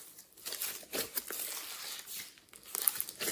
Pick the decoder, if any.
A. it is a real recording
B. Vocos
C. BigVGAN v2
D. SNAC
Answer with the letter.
A